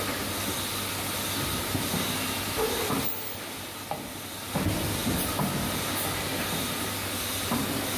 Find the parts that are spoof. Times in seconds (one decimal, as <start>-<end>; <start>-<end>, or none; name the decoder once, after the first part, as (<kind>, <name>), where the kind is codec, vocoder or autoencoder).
none